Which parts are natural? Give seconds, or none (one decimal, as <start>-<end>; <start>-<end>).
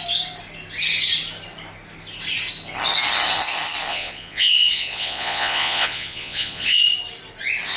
0.0-3.9; 6.8-7.8